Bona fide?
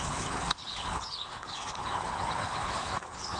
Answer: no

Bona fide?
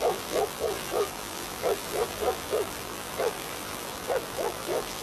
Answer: no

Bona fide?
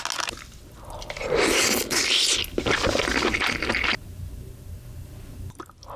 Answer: yes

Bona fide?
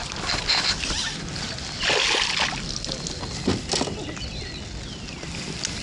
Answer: yes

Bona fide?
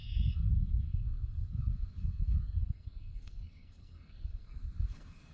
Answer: no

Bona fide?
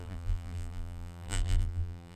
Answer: no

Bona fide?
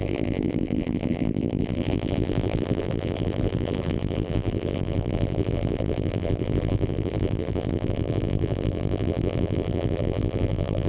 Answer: no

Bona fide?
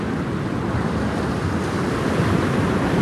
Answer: no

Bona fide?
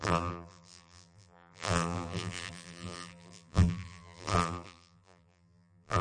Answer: no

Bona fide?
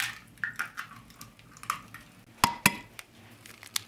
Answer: yes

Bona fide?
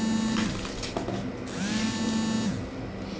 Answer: yes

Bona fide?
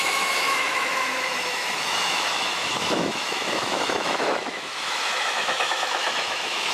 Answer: no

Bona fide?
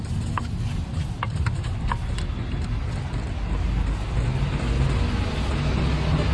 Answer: yes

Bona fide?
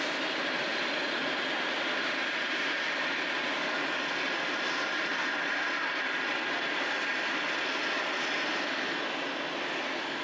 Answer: yes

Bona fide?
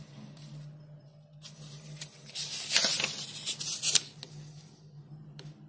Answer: yes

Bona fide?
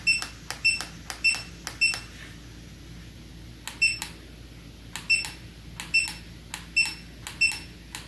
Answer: yes